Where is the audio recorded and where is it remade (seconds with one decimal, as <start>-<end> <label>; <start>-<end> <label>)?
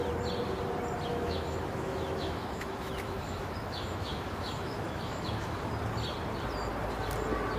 0.0-1.1 recorded; 1.1-5.7 remade; 5.7-7.6 recorded